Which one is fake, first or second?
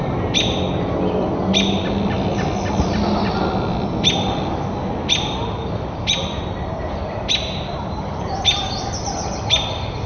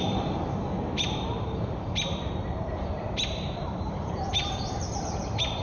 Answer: second